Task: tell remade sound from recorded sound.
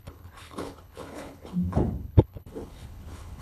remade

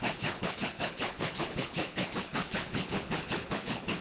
remade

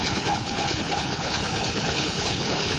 remade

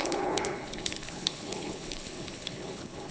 remade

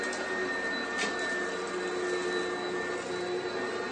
recorded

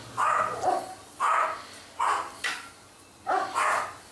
recorded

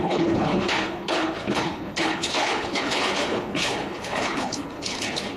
remade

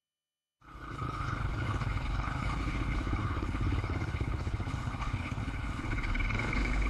remade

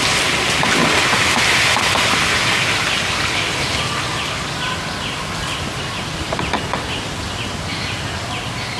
recorded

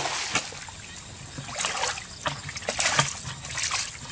recorded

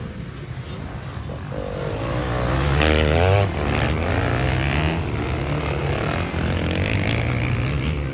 recorded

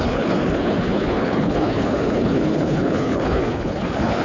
remade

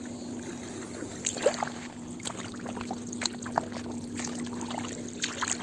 recorded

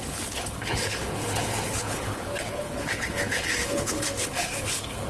remade